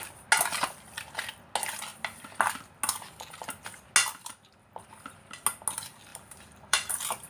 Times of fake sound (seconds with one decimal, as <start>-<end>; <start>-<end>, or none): 6.1-7.3